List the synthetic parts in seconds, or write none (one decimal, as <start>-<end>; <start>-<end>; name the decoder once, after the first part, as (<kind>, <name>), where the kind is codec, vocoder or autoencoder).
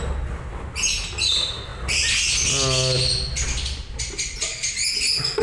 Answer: none